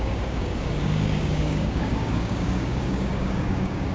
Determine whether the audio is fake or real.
fake